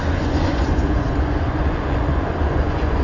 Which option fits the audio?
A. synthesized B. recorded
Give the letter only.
A